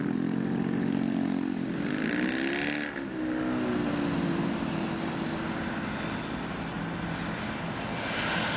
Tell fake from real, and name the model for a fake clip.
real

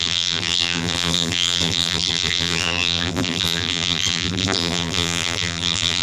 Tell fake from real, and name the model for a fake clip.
fake, vocoder, BigVGAN v2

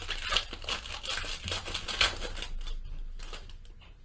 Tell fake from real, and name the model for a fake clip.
real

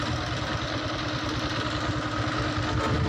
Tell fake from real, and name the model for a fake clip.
real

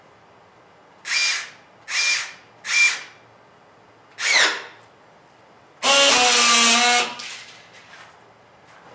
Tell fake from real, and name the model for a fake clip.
real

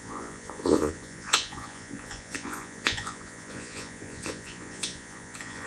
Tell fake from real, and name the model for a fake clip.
fake, vocoder, Vocos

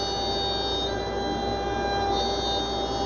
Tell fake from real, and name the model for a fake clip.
real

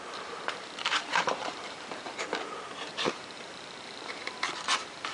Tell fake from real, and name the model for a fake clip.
fake, vocoder, BigVGAN v2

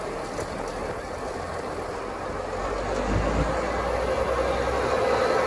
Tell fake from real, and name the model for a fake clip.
real